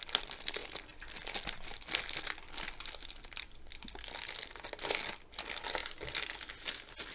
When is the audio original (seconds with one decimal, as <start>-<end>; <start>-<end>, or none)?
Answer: 0.0-7.1